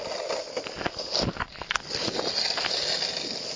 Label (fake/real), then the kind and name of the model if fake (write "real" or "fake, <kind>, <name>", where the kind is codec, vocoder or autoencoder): real